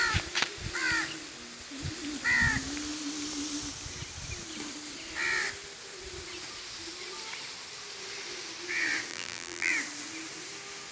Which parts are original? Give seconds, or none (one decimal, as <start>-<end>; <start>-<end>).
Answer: 0.0-9.1; 9.7-10.9